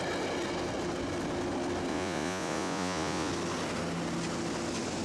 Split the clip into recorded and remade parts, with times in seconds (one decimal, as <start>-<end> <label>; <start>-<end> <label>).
0.0-1.9 recorded; 1.9-3.3 remade; 3.3-5.0 recorded